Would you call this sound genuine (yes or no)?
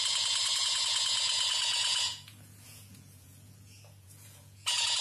no